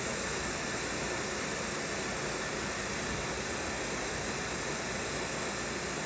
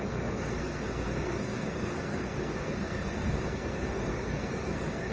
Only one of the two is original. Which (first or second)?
first